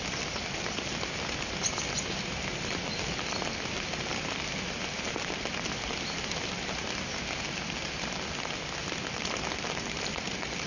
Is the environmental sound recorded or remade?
recorded